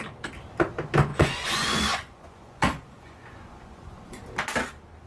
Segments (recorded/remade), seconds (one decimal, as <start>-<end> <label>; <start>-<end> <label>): 0.0-1.1 recorded; 1.1-4.2 remade; 4.2-5.1 recorded